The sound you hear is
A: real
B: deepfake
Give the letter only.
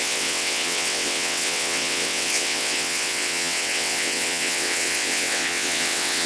B